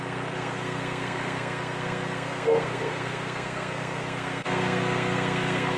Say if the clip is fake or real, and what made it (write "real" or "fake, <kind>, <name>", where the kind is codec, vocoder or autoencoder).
fake, codec, SNAC